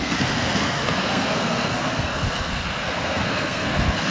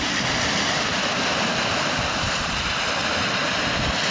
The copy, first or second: first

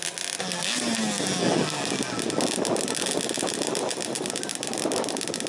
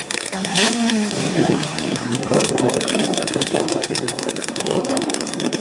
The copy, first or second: second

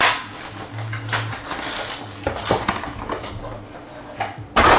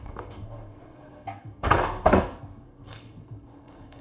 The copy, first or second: second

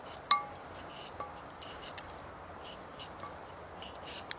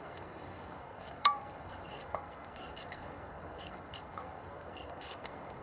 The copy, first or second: second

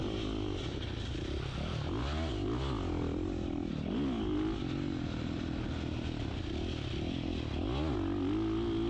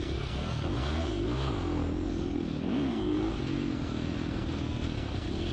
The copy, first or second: second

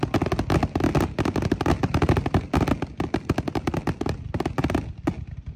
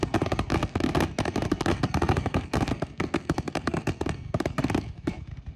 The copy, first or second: second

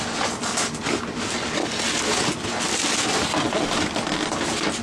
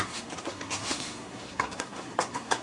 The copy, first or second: second